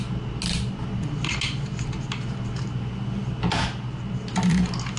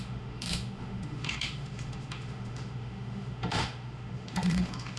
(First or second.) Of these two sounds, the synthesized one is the second